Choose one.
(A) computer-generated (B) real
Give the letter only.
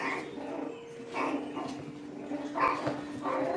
B